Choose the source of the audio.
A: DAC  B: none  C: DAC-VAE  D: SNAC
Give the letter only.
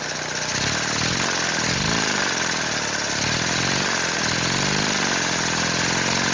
B